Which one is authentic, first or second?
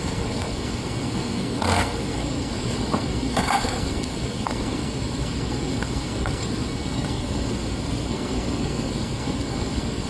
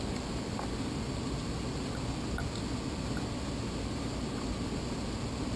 second